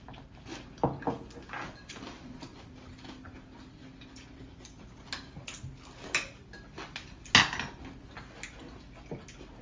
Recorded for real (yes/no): yes